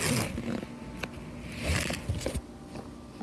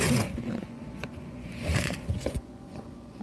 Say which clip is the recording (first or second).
first